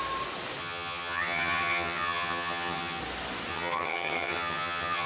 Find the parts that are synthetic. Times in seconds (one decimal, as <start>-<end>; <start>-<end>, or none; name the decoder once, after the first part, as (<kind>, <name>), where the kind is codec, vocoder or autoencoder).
0.6-3.0 (vocoder, HiFi-GAN); 3.5-5.1